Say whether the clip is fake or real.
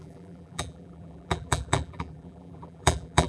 fake